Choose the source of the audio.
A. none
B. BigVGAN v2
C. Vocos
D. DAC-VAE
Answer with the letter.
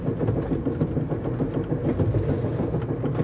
A